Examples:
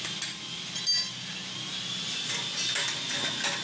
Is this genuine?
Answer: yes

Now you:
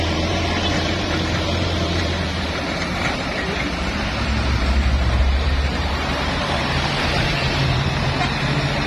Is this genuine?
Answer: no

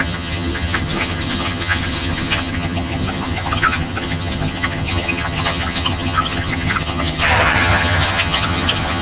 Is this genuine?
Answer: no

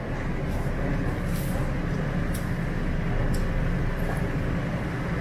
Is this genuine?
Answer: yes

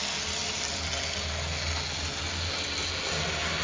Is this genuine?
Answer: yes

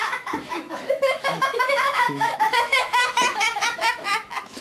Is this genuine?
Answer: no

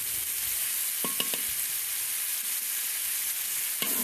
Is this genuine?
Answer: yes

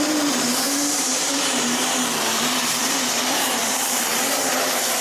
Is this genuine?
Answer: no